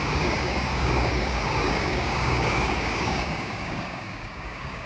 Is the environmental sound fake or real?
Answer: fake